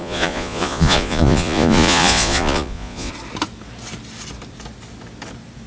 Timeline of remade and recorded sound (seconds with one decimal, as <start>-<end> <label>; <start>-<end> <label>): 0.0-3.1 remade; 3.1-5.7 recorded